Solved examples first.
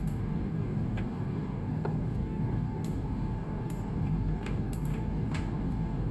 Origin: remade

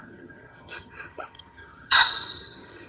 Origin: remade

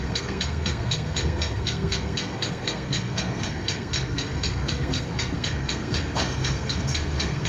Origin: remade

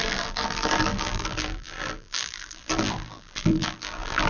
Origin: remade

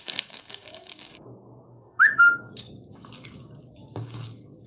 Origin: remade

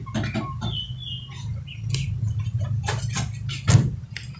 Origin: recorded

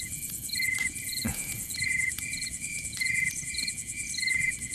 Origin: remade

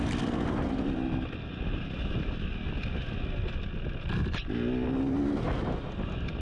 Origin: recorded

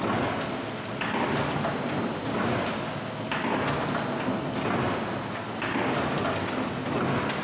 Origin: recorded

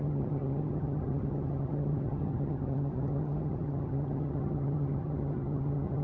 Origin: remade